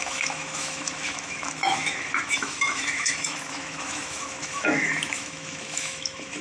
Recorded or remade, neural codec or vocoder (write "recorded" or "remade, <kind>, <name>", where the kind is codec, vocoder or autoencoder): remade, autoencoder, DAC-VAE